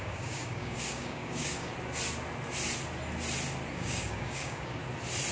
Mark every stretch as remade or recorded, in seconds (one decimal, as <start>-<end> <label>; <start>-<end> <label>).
0.0-1.7 remade; 1.7-3.7 recorded; 3.7-4.8 remade; 4.8-5.3 recorded